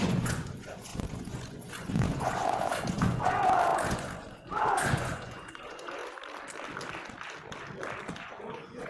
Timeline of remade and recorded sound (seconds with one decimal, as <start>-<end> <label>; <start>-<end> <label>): 0.0-6.0 remade; 6.0-8.2 recorded; 8.2-8.9 remade